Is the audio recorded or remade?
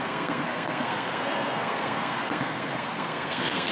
remade